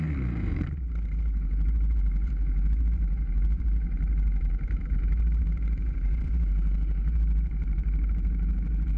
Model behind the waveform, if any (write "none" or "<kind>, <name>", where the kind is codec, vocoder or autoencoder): vocoder, BigVGAN v2